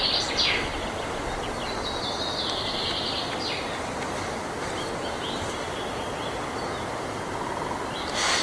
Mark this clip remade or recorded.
recorded